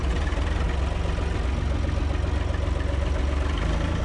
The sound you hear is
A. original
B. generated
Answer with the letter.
A